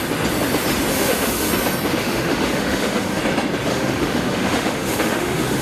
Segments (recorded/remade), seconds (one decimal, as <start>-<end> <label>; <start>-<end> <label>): 0.0-0.9 recorded; 0.9-1.5 remade; 1.5-2.0 recorded; 2.0-3.2 remade; 3.2-3.7 recorded; 3.7-5.6 remade